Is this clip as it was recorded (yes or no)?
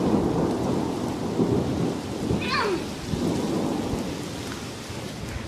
yes